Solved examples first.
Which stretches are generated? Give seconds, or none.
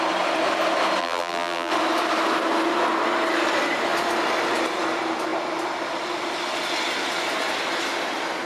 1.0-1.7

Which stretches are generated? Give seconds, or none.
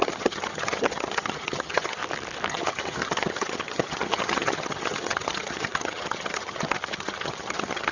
0.0-2.0; 2.5-7.9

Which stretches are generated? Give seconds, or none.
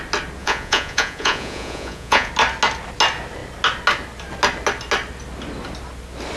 0.4-2.3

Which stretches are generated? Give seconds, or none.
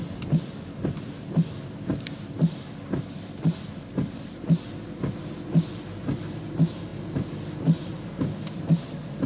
none